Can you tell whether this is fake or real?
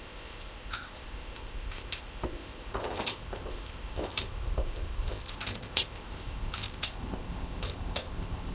fake